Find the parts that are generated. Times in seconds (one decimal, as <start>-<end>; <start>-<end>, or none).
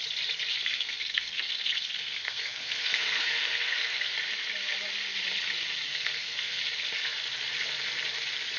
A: 0.5-4.1; 5.9-6.6